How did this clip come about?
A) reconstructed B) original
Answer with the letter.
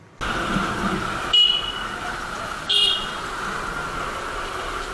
B